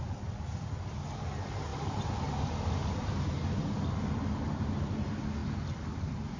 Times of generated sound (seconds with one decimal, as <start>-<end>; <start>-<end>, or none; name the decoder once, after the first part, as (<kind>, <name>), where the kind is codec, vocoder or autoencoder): none